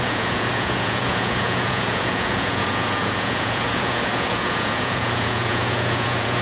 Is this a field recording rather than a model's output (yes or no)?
no